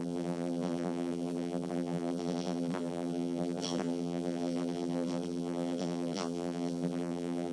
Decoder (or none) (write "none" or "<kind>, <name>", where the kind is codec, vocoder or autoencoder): vocoder, BigVGAN v2